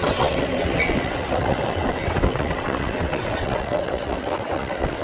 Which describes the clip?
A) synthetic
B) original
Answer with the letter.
A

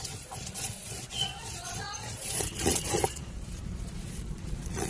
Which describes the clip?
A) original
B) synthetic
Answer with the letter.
B